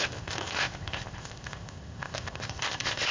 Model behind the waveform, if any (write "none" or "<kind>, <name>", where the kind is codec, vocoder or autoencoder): codec, ZipCodec